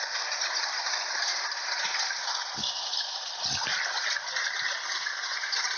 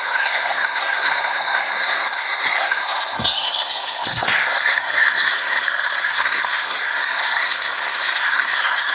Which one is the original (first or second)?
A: first